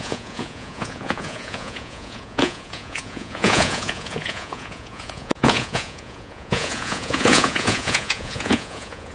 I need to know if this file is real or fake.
fake